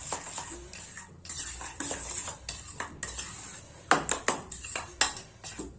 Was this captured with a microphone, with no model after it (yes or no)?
yes